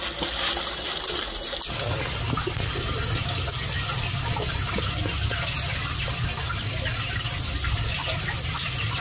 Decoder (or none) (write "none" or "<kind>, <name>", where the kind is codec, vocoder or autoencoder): none